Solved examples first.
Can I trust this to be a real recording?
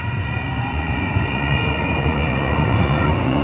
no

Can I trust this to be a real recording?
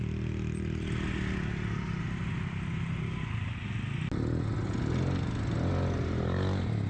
yes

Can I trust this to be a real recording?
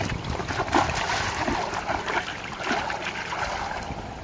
no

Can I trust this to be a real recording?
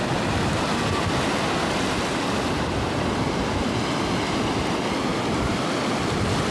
yes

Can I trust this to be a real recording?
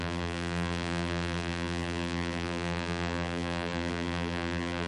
no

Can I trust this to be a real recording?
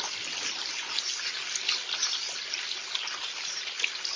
yes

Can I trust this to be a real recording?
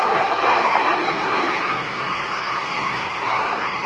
no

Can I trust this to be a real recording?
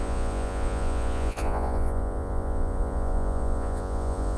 no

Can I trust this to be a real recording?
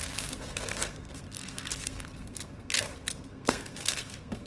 no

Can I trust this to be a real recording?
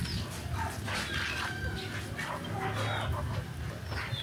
yes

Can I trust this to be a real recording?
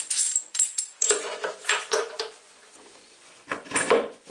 no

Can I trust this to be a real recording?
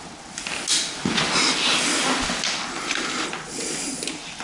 yes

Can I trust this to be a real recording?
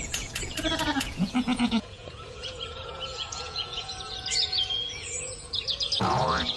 no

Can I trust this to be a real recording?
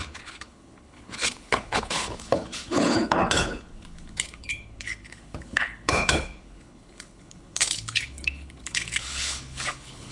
no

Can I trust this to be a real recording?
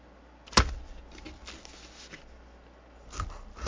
yes